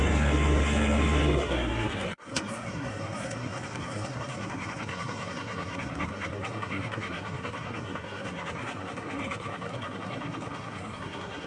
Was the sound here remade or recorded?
remade